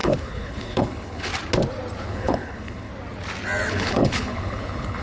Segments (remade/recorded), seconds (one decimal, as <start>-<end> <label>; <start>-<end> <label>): 0.0-1.3 remade; 1.3-2.0 recorded; 2.0-2.9 remade; 2.9-3.7 recorded; 3.7-5.0 remade